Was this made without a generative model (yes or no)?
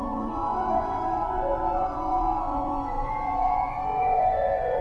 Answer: no